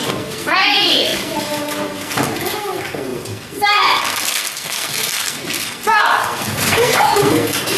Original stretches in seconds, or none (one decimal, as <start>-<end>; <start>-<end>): none